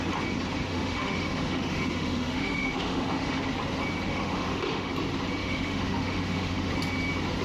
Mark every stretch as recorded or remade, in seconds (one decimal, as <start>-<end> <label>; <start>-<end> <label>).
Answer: 0.0-0.7 recorded; 0.7-3.4 remade; 3.4-4.1 recorded; 4.1-4.9 remade; 4.9-5.4 recorded; 5.4-6.7 remade; 6.7-7.4 recorded

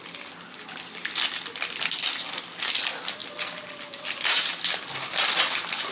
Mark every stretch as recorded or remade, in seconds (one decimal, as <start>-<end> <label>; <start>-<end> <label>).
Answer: 0.0-5.9 recorded

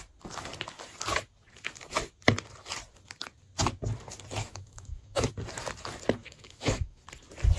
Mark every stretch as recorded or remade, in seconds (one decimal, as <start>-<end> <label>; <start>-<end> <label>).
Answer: 0.0-4.4 recorded; 4.4-5.3 remade; 5.3-6.2 recorded; 6.2-7.0 remade; 7.0-7.6 recorded

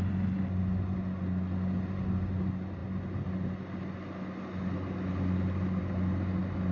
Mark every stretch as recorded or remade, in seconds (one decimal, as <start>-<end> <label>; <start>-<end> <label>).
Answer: 0.0-6.7 recorded